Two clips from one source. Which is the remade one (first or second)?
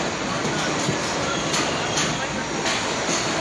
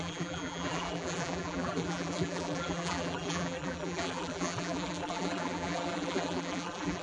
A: second